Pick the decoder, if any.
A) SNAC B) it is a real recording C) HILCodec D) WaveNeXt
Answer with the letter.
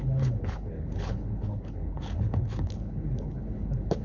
C